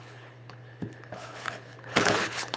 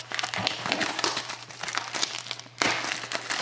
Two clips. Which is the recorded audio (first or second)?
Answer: second